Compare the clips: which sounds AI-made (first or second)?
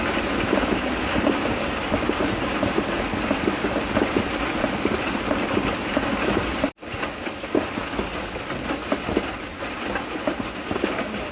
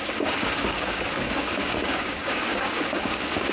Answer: second